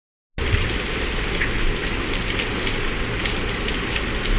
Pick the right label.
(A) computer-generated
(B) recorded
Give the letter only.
B